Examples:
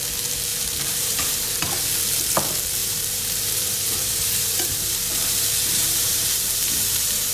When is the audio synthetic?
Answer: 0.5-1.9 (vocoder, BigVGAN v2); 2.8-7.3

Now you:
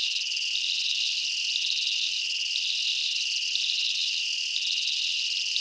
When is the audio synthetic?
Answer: none